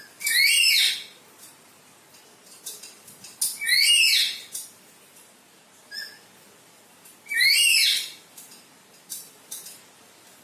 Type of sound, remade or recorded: recorded